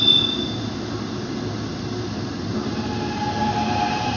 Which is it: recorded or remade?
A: recorded